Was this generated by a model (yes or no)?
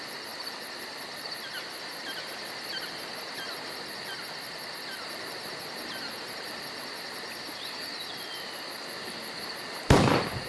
no